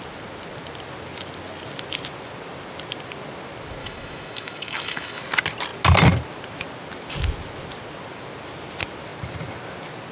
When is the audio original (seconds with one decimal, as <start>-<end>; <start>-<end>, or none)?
0.0-3.8; 5.2-10.1